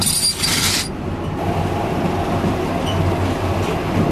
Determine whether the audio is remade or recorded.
recorded